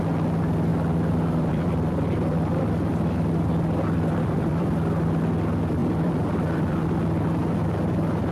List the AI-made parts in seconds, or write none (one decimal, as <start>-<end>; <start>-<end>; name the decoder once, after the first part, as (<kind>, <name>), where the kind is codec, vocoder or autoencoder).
0.7-5.1 (vocoder, BigVGAN v2); 5.8-6.8